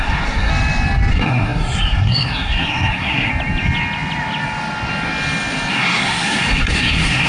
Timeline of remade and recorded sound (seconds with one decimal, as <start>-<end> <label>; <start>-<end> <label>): 0.0-0.5 remade; 0.5-1.1 recorded; 1.1-3.3 remade; 3.3-5.7 recorded; 5.7-7.3 remade